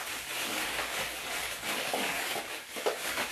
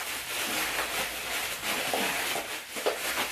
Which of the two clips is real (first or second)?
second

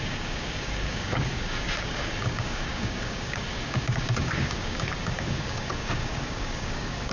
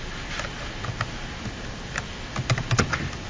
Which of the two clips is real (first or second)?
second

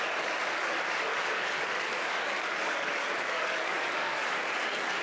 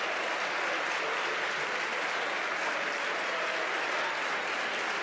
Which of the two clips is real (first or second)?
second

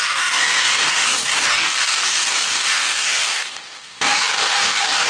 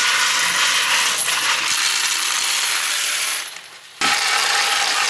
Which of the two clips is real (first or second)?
second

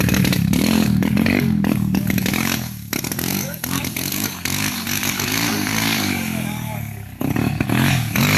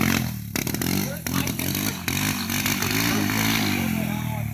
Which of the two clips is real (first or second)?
second